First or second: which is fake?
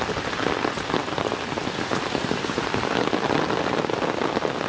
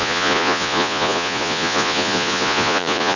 second